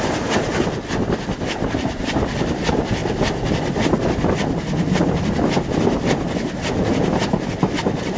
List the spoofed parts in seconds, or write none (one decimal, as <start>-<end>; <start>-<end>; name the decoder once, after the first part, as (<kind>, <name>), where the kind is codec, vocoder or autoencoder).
none